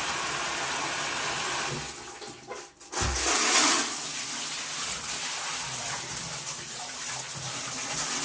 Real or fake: real